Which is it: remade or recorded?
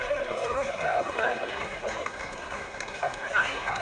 remade